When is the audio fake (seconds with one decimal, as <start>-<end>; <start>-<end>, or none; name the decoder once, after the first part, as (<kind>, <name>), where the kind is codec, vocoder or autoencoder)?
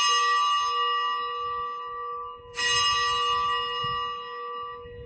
none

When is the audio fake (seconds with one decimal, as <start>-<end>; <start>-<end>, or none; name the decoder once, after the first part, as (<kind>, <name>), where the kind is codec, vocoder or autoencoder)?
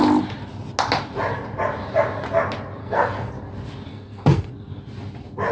2.8-3.3 (codec, SNAC); 3.9-4.5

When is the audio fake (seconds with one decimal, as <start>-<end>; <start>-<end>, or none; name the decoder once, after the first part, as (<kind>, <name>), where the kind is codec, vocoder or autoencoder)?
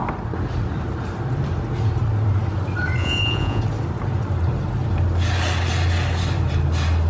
3.0-3.6 (vocoder, Vocos)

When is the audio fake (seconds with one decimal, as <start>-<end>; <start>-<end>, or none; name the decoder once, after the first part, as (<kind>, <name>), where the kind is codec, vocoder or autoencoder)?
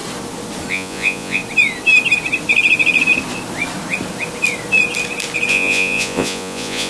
0.7-1.4 (vocoder, Vocos); 5.5-6.9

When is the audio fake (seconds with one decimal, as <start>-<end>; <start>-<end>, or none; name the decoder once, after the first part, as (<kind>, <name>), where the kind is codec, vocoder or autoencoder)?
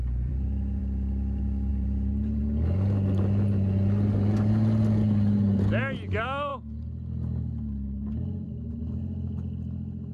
0.0-0.8 (vocoder, BigVGAN v2); 1.7-2.4